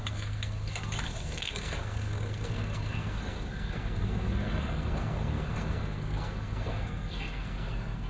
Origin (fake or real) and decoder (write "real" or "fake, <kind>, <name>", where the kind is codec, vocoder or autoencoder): fake, codec, SNAC